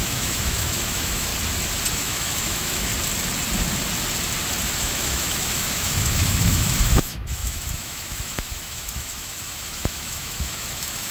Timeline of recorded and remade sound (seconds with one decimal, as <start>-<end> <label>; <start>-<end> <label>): 0.0-1.3 remade; 1.3-1.9 recorded; 1.9-2.9 remade; 2.9-4.8 recorded; 4.8-11.1 remade